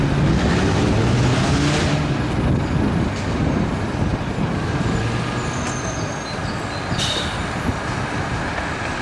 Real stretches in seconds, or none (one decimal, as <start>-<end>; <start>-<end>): 0.0-4.1; 5.0-9.0